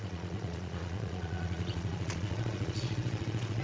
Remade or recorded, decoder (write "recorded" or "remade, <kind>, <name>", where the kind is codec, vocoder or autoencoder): remade, vocoder, Vocos